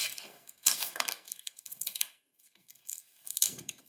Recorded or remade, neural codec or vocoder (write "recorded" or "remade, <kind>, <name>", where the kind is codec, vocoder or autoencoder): remade, codec, SNAC